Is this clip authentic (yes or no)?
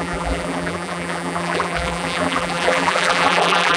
no